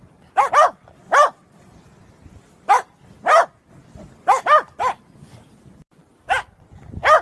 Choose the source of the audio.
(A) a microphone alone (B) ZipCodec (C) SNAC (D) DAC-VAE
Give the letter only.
A